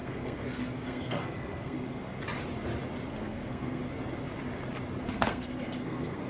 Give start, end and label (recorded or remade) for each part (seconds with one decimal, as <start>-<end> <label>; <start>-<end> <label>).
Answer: 0.0-2.2 remade; 2.2-3.1 recorded; 3.1-3.8 remade; 3.8-5.0 recorded; 5.0-6.3 remade